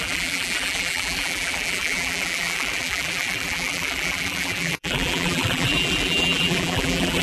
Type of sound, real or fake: fake